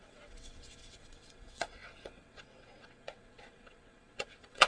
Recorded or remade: remade